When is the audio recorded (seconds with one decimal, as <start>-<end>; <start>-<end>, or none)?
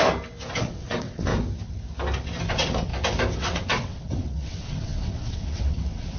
0.0-0.6; 1.3-2.5; 2.9-3.4